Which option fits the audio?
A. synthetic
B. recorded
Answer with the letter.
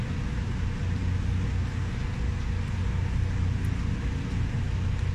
B